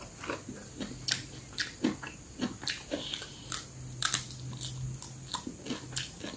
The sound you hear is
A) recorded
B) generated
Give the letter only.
A